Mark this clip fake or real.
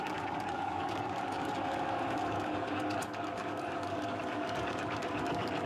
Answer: fake